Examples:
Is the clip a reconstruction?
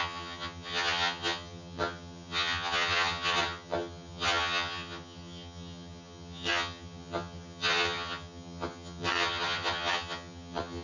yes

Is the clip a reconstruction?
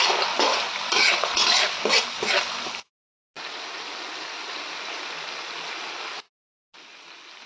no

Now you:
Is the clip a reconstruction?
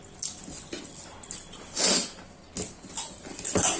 no